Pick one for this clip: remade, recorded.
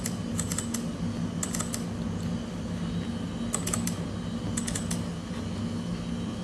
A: recorded